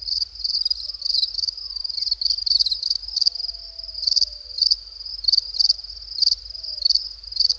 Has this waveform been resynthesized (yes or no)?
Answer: no